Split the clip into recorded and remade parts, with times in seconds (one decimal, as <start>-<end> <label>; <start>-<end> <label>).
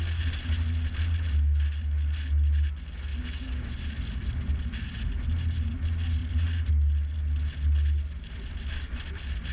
0.0-3.1 recorded; 3.1-3.7 remade; 3.7-9.5 recorded